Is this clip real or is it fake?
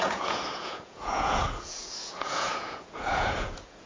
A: fake